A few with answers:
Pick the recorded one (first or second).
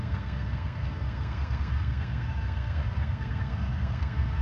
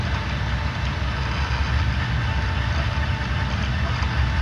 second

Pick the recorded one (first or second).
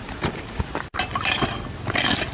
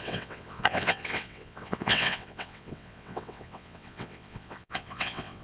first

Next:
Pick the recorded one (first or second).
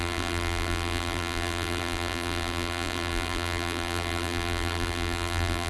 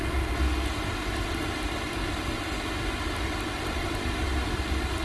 second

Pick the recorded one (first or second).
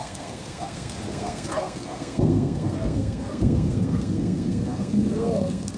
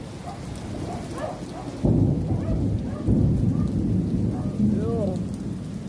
second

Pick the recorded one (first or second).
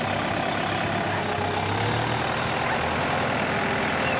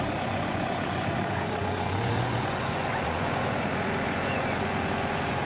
first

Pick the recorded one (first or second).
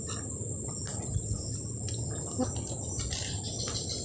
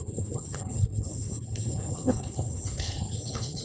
first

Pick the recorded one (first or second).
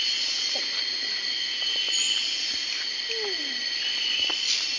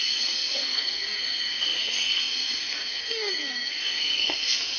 first